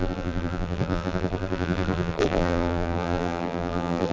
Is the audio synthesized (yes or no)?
yes